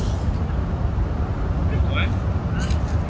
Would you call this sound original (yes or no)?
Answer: yes